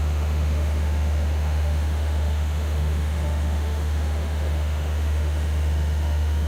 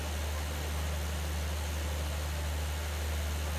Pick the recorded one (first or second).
second